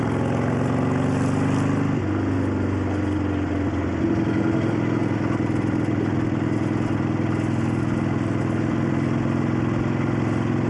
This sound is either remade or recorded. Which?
recorded